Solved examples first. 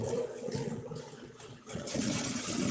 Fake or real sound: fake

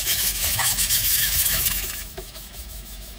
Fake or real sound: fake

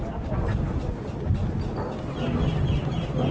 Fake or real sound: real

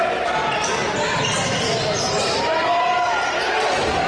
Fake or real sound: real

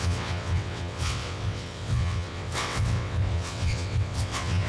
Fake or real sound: fake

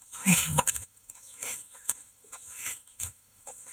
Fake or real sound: fake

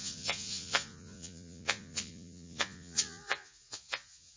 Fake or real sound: fake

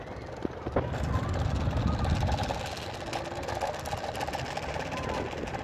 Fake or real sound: real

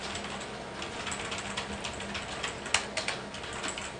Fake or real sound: real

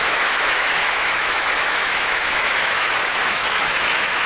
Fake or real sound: fake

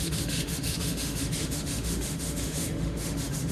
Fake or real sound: fake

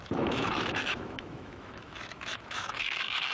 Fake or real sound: fake